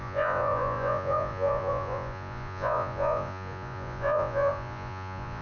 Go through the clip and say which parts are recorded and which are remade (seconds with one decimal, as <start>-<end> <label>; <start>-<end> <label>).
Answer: 0.0-5.4 remade